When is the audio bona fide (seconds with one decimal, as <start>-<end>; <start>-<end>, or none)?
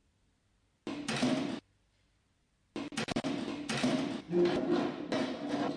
0.0-5.8